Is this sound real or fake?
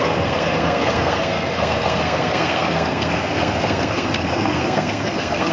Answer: fake